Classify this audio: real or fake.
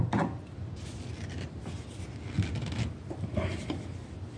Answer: real